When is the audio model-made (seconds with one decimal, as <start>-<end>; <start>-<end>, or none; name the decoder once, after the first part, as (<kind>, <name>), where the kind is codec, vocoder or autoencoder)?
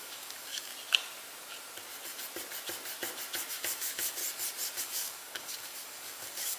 0.0-0.7 (codec, DAC); 3.5-4.2; 4.8-6.6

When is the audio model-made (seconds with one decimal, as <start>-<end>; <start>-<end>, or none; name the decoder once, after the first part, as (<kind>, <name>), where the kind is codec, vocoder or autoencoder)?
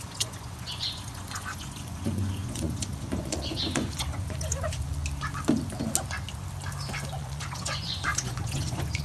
0.0-5.0 (vocoder, Vocos); 7.1-9.0